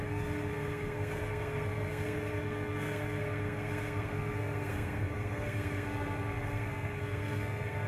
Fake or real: fake